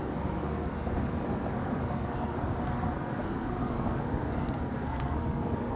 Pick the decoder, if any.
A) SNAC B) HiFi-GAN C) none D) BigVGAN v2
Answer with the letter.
A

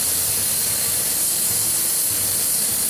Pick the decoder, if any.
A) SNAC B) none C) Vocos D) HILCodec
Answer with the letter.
B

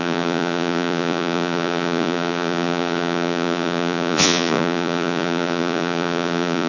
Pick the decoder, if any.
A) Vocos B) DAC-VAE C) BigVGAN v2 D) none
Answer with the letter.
A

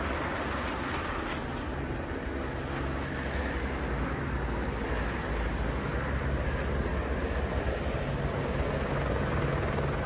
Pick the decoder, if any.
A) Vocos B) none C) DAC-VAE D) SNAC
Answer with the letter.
B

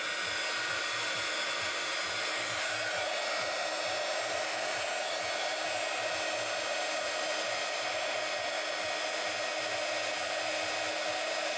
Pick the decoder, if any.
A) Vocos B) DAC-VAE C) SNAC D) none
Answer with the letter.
D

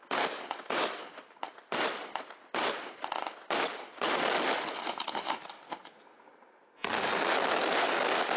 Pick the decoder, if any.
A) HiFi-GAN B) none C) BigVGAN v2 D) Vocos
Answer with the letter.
B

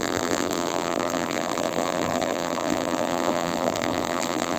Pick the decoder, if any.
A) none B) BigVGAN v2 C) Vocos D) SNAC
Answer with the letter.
B